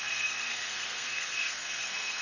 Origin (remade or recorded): remade